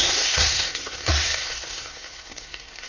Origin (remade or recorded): remade